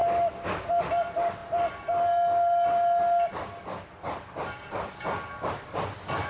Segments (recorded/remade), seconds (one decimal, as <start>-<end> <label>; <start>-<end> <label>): 0.0-6.3 recorded